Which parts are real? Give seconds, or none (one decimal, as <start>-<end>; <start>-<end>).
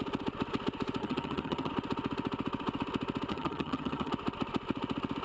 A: 0.0-1.0; 1.7-3.3; 4.1-5.2